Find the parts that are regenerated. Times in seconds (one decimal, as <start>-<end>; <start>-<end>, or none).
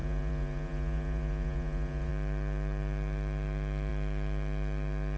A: 0.0-2.1